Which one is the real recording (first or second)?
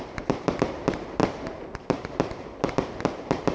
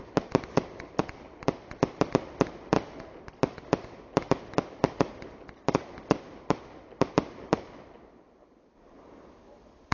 second